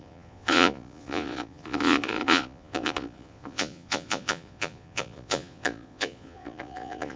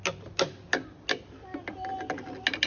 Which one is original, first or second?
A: second